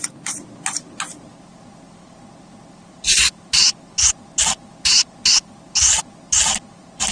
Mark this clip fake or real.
real